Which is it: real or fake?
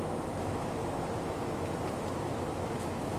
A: fake